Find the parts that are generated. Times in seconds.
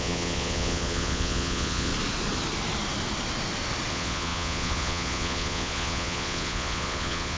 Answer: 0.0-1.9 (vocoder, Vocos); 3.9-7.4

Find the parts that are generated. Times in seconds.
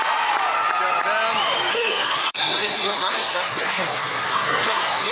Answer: 1.7-5.1 (codec, SNAC)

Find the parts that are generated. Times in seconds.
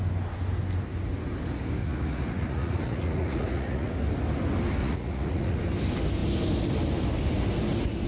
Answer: 1.8-3.9 (vocoder, Vocos); 4.8-5.6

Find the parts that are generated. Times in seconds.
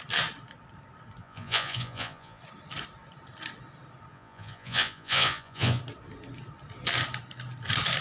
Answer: 1.2-2.4 (vocoder, Vocos); 4.1-5.8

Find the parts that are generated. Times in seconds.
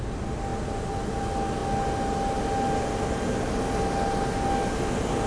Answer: none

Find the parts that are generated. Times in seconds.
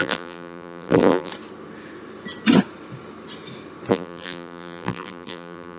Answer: 0.0-1.3 (vocoder, BigVGAN v2); 3.9-5.8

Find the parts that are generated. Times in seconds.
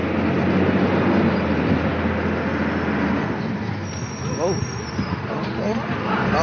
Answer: none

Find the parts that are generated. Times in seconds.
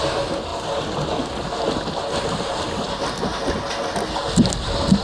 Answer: none